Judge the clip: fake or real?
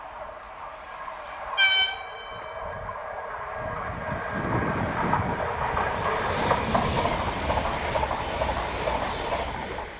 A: real